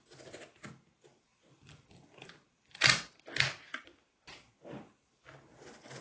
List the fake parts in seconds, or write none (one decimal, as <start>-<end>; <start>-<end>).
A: none